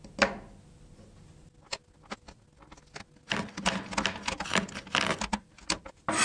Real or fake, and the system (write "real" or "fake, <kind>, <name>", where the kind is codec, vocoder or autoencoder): real